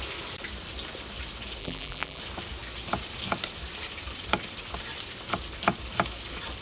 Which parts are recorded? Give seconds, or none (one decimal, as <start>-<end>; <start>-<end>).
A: 0.0-1.6; 2.2-6.6